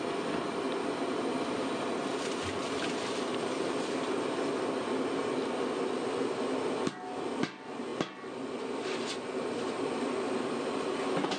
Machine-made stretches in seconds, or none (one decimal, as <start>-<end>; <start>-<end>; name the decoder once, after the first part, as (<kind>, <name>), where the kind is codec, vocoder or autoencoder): none